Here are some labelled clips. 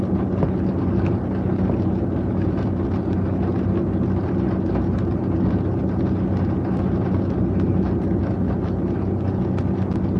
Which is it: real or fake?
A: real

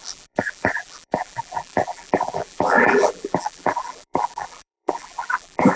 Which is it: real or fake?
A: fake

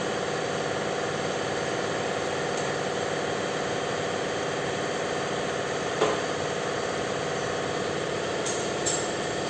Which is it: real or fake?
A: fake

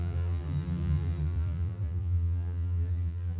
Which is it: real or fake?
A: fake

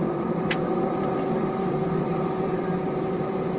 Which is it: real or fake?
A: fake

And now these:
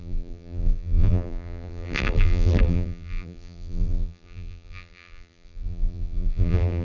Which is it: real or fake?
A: fake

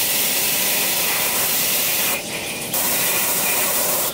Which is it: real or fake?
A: fake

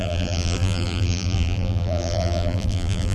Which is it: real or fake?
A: fake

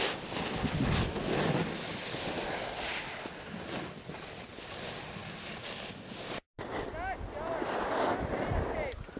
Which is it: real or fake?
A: real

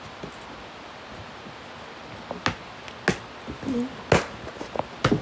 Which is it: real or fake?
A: real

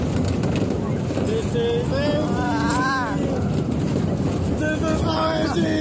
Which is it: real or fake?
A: real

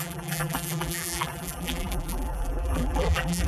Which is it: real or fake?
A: fake